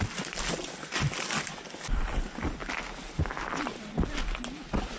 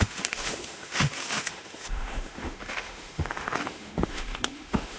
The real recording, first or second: first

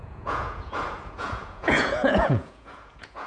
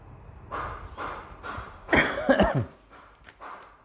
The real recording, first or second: second